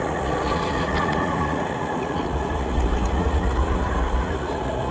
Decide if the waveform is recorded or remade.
remade